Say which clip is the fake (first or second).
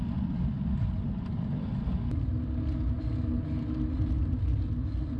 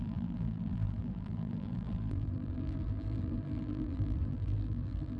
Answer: second